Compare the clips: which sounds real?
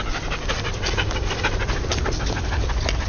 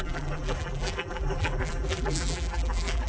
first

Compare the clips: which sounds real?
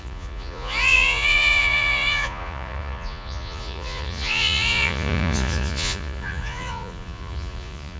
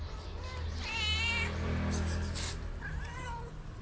second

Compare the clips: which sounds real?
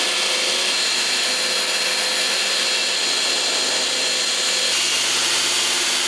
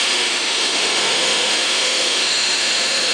first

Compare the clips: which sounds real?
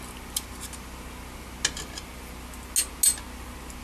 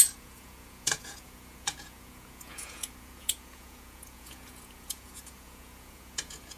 first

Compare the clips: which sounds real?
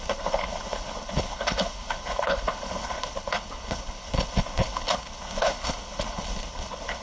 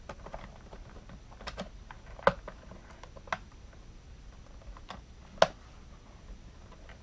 second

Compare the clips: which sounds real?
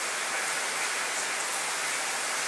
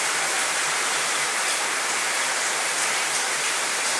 first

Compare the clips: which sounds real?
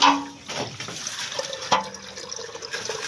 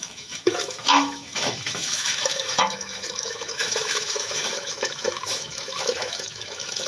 first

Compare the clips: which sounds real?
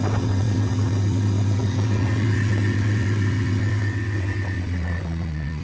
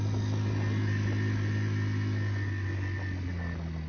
second